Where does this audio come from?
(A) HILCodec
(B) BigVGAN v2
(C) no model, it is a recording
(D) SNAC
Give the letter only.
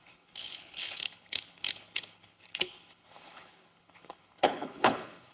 A